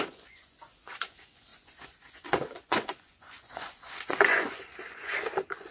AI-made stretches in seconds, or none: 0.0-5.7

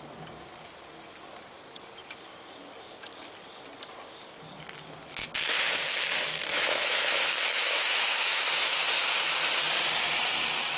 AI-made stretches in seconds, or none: 6.5-8.5

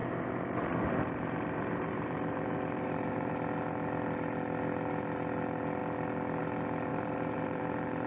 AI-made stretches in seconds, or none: 0.0-3.3; 6.9-7.6

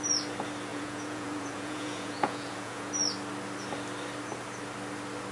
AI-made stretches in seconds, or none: 0.7-2.9

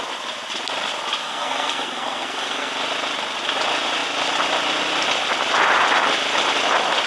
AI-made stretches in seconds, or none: 1.2-2.7

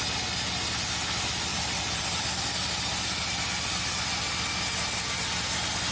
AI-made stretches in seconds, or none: 1.5-2.2